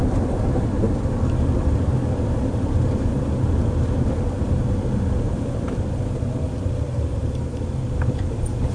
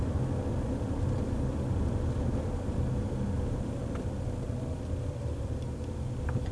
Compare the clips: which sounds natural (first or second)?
second